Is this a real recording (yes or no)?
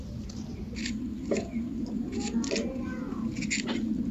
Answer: yes